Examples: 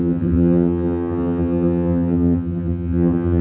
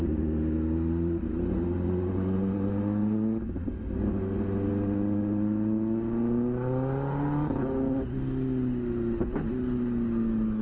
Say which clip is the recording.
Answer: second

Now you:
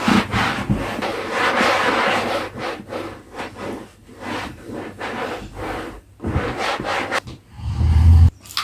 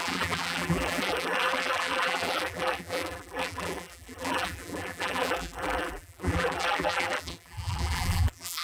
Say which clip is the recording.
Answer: first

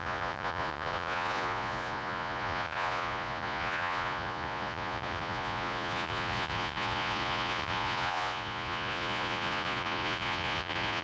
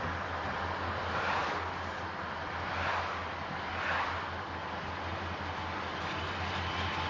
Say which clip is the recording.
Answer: second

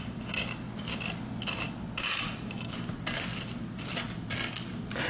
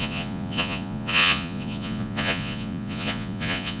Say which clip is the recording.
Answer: first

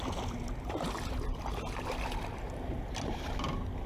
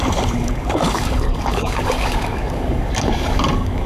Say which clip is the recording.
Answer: first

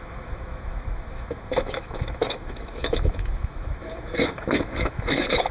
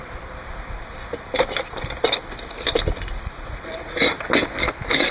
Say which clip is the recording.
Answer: second